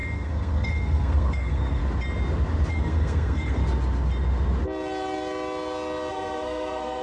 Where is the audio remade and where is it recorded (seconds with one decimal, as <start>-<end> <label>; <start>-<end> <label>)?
0.0-1.8 remade; 1.8-2.7 recorded; 2.7-3.6 remade; 3.6-6.1 recorded; 6.1-7.0 remade